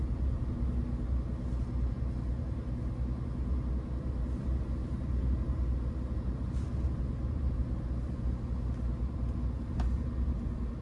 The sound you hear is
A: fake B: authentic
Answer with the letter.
B